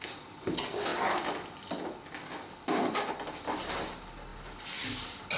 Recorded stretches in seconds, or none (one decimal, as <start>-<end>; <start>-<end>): 0.0-5.4